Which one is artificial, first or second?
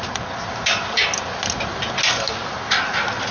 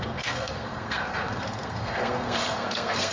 second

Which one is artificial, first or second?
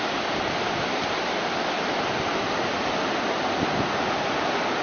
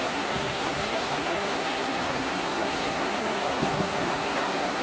second